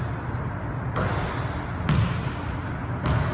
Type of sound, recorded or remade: recorded